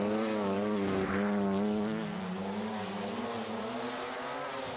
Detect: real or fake real